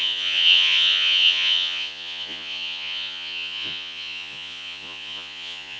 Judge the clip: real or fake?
fake